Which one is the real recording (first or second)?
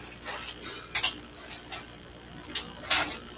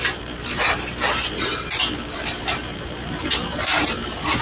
first